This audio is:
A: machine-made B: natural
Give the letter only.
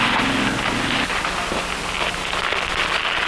B